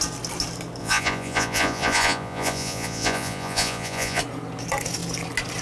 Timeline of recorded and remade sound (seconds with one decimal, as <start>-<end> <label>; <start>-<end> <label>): 0.0-0.8 recorded; 0.8-4.2 remade; 4.2-5.6 recorded